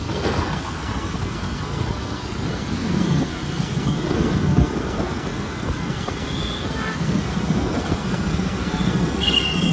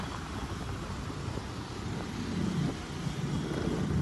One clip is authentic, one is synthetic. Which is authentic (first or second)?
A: second